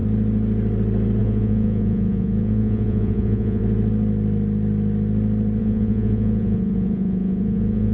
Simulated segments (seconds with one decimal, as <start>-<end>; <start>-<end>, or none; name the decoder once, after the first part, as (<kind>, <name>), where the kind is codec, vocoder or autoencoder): 1.2-3.6 (vocoder, Vocos); 5.6-7.9